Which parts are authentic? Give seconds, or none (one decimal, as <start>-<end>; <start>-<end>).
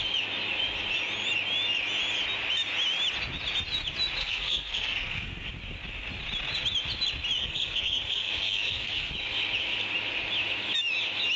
0.0-4.2; 5.5-7.4; 9.1-11.4